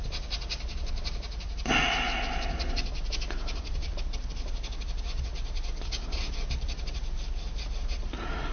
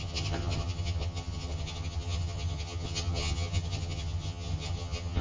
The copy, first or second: second